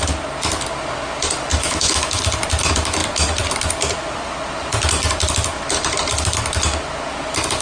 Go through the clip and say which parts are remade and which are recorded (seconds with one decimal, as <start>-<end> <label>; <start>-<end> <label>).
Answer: 0.0-1.6 recorded; 1.6-2.2 remade; 2.2-7.6 recorded